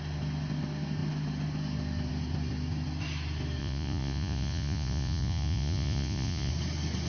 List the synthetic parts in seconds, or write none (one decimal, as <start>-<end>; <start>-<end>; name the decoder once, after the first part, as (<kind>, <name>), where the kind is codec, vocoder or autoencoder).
3.6-6.5 (vocoder, Vocos)